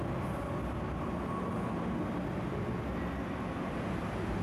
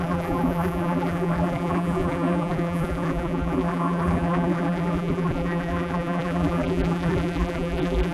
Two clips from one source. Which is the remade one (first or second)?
second